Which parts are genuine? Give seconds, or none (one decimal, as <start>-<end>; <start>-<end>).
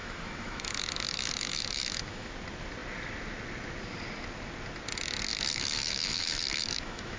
2.3-5.3